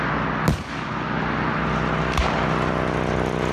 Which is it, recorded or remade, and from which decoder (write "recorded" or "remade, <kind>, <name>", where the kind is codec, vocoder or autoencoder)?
recorded